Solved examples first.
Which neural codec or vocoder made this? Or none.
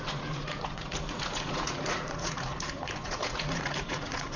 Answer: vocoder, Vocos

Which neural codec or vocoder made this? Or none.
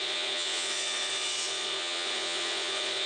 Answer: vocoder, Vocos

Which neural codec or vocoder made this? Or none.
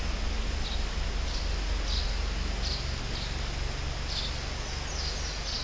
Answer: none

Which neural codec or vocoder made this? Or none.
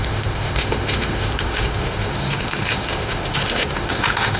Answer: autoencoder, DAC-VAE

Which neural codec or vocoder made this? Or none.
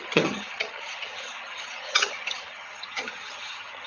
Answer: vocoder, HiFi-GAN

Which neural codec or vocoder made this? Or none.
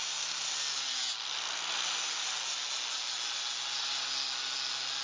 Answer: none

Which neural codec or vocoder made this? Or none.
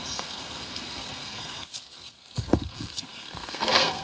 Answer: codec, SNAC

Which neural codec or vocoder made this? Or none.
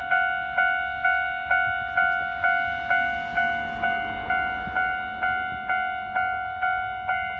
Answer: none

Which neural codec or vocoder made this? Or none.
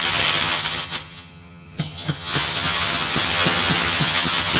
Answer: vocoder, HiFi-GAN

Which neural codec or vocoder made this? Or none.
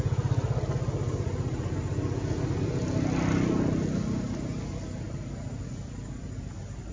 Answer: none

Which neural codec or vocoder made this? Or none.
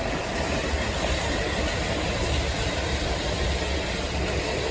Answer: none